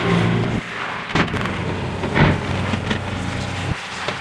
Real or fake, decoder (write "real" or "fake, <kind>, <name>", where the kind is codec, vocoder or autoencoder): real